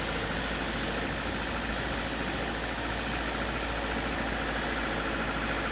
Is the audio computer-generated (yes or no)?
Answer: no